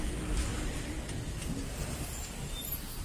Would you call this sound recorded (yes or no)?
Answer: yes